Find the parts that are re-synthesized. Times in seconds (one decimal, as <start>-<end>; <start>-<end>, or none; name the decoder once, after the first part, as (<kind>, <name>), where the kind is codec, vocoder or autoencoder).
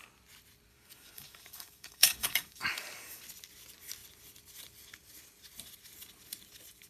0.7-3.2 (codec, DAC)